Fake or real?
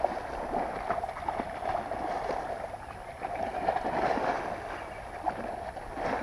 real